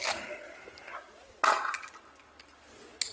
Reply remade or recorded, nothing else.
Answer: recorded